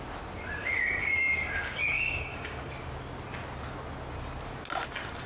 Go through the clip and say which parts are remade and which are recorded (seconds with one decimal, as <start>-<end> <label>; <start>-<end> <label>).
0.0-0.6 recorded; 0.6-2.7 remade; 2.7-5.3 recorded